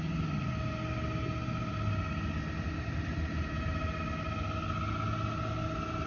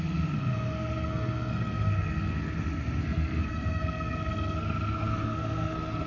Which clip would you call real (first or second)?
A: first